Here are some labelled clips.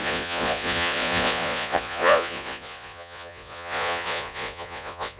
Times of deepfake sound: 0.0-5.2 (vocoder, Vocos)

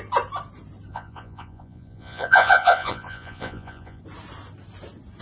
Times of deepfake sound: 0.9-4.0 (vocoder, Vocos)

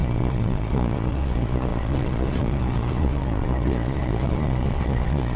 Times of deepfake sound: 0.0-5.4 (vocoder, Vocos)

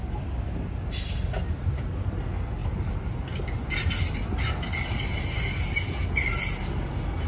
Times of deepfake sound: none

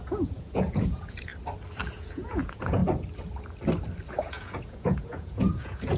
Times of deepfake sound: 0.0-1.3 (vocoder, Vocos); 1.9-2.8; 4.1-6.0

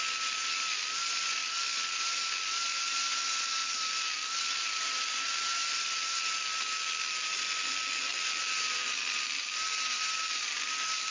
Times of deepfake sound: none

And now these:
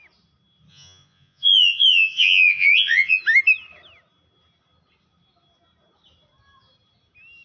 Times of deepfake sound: 0.7-3.2 (vocoder, Vocos)